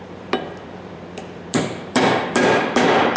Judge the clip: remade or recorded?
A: remade